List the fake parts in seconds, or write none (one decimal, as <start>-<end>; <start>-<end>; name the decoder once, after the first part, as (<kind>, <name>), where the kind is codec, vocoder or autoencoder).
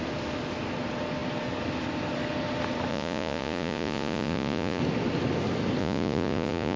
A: 2.9-4.8 (vocoder, Vocos); 5.8-6.8